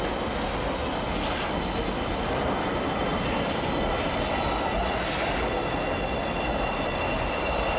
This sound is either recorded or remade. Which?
recorded